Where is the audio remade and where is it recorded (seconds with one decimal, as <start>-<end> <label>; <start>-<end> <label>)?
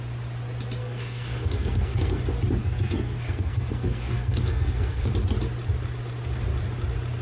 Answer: 0.0-0.8 recorded; 0.8-2.2 remade; 2.2-2.6 recorded; 2.6-5.1 remade; 5.1-7.2 recorded